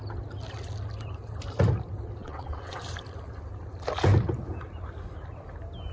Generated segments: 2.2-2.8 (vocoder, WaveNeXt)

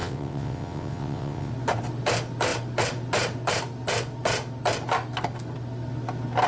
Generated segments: 0.0-1.5 (vocoder, WaveNeXt)

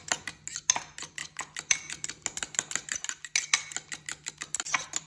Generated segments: none

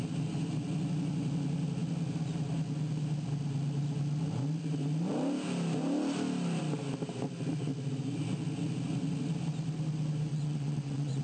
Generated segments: 10.3-11.2 (vocoder, WaveNeXt)

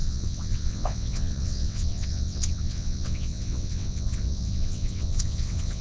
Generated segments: 0.0-5.8 (vocoder, WaveNeXt)

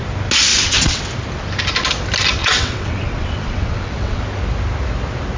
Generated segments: 0.5-1.0 (vocoder, WaveNeXt); 2.4-4.2

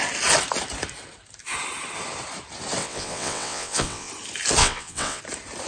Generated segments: 2.8-4.1 (vocoder, WaveNeXt); 4.6-5.2